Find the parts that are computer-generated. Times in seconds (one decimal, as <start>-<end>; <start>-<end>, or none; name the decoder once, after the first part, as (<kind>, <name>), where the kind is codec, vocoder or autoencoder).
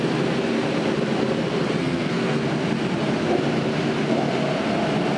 1.8-2.4 (codec, SNAC)